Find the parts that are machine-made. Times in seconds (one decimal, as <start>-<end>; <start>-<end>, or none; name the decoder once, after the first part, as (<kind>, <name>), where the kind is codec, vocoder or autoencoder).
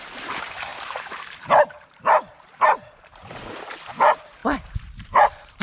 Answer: 0.0-5.6 (vocoder, BigVGAN v2)